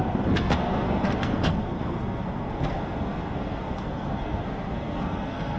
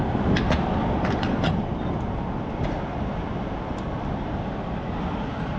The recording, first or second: second